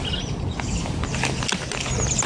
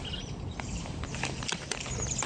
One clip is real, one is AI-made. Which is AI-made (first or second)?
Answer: second